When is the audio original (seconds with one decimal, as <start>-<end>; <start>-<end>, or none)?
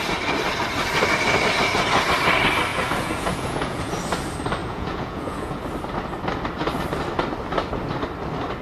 0.0-2.7; 3.9-4.6; 5.6-8.6